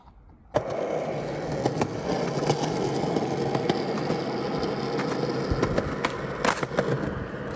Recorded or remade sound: recorded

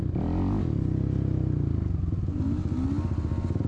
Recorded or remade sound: recorded